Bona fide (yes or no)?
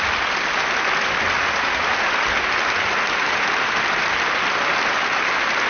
yes